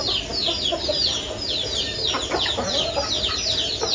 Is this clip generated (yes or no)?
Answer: no